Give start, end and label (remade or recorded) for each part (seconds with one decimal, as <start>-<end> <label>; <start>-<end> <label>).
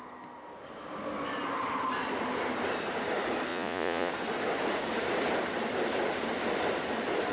0.0-3.5 recorded; 3.5-4.1 remade; 4.1-7.3 recorded